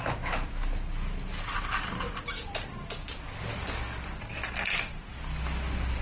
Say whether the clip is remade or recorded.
recorded